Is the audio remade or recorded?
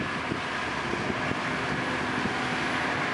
recorded